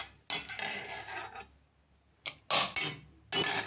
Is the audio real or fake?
real